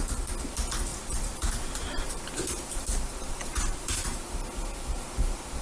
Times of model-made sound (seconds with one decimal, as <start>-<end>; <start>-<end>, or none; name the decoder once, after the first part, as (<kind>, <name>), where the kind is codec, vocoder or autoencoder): 0.9-4.3 (vocoder, BigVGAN v2)